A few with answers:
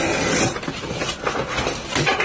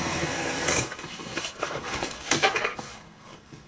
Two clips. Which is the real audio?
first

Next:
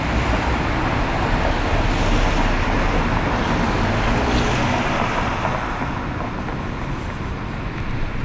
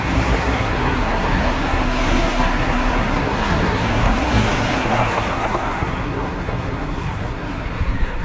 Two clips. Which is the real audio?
first